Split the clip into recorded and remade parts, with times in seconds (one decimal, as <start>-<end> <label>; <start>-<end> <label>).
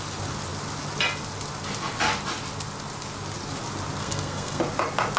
0.0-4.0 recorded; 4.0-4.6 remade; 4.6-5.2 recorded